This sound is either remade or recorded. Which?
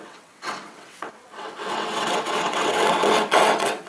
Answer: remade